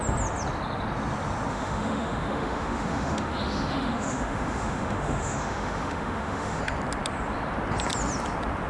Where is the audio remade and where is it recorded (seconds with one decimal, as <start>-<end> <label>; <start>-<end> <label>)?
0.0-1.5 recorded; 1.5-6.6 remade; 6.6-8.7 recorded